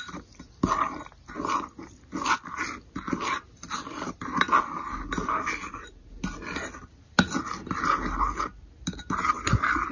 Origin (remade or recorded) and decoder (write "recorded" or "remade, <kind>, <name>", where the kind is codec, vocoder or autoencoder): recorded